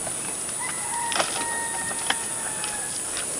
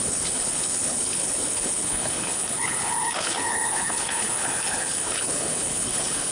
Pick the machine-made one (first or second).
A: second